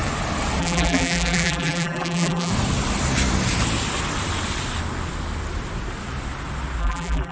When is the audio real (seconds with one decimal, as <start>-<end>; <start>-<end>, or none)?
0.0-0.6; 2.5-6.8